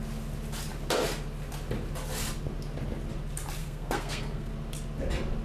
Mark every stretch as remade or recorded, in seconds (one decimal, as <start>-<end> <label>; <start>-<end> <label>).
0.0-3.6 recorded; 3.6-4.5 remade; 4.5-5.4 recorded